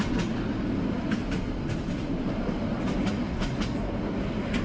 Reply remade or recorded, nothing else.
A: recorded